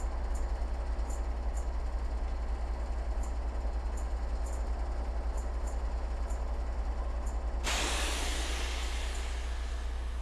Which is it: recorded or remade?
recorded